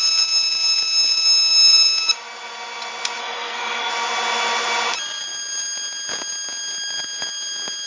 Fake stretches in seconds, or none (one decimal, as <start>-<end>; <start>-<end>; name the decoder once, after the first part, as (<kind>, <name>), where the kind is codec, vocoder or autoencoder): 3.2-3.9 (codec, SNAC)